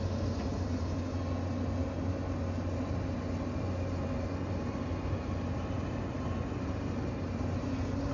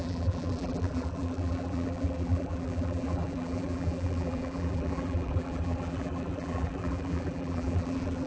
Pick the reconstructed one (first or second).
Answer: second